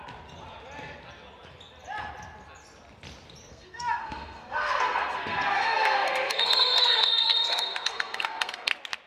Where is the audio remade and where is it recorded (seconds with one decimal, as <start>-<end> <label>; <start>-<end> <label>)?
0.0-3.5 recorded; 3.5-8.7 remade; 8.7-9.1 recorded